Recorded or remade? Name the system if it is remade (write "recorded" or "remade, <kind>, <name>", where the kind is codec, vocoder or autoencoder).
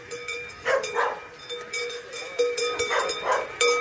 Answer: remade, vocoder, BigVGAN v2